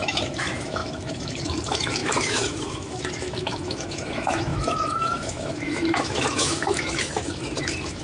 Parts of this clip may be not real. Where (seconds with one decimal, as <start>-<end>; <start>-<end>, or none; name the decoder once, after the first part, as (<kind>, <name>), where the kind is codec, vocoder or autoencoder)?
0.0-8.0 (autoencoder, DAC-VAE)